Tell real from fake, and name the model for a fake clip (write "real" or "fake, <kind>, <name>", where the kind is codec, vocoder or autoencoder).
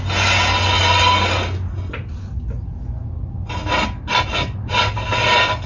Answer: real